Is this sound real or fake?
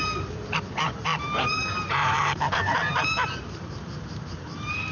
fake